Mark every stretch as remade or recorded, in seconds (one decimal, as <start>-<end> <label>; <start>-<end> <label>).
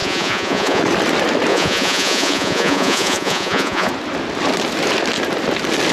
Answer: 0.0-0.8 remade; 0.8-1.5 recorded; 1.5-3.9 remade; 3.9-5.9 recorded